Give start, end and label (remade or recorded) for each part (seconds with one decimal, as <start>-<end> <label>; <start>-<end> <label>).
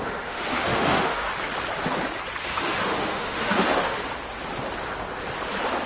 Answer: 0.0-1.3 remade; 1.3-2.5 recorded; 2.5-4.0 remade; 4.0-5.9 recorded